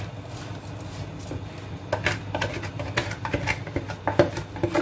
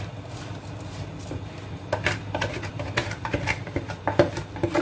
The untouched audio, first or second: first